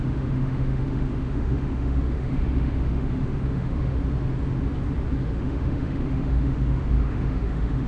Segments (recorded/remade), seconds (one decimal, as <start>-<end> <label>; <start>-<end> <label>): 0.0-4.0 remade; 4.0-5.2 recorded; 5.2-7.9 remade